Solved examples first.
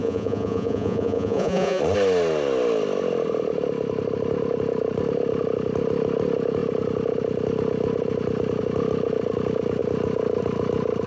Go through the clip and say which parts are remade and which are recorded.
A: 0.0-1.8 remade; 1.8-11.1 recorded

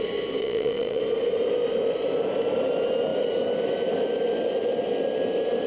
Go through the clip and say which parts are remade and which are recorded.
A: 0.0-0.4 recorded; 0.4-1.0 remade; 1.0-5.7 recorded